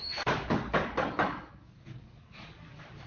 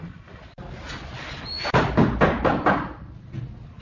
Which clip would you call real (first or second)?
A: second